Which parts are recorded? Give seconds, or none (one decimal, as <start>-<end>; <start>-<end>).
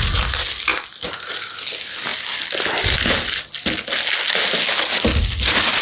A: 0.0-0.7; 1.4-5.8